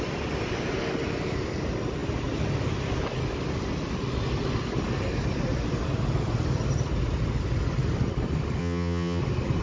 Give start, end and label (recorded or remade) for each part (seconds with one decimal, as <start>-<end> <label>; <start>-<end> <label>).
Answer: 0.0-8.6 recorded; 8.6-9.2 remade; 9.2-9.6 recorded